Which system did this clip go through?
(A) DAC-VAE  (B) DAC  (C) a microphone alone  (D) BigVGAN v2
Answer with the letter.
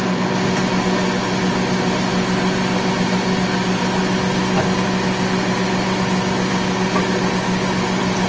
C